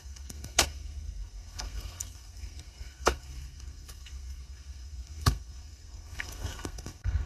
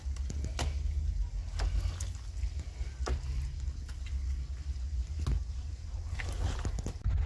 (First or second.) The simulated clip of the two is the first